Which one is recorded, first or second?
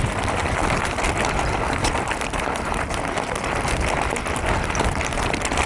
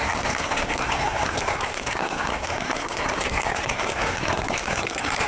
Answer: first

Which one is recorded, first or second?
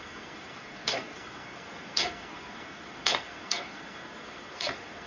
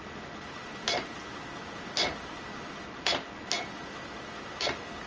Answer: second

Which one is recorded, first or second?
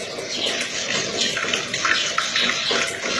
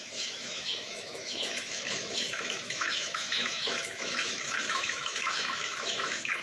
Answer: first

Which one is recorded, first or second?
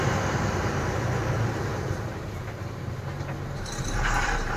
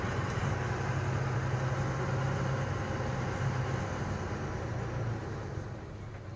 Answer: second